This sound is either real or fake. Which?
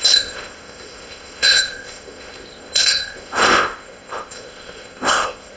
fake